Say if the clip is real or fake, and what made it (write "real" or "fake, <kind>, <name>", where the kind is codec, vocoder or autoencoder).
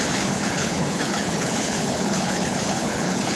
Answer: fake, codec, HILCodec